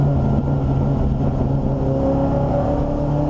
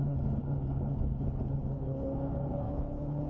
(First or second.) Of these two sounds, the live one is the first